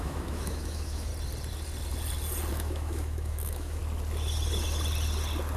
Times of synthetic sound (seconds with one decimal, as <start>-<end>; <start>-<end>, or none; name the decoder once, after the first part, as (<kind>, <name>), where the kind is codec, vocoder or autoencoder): 0.0-1.1 (autoencoder, DAC-VAE); 2.5-3.8